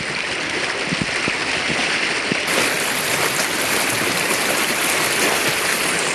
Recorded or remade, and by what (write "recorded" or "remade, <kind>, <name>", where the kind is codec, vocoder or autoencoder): recorded